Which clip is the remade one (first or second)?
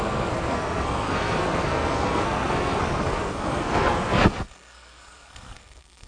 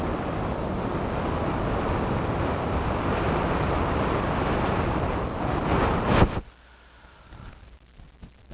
first